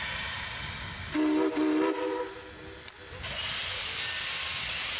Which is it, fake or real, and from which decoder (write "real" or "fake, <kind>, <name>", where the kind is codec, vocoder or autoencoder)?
real